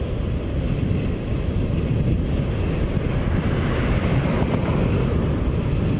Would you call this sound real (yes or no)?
yes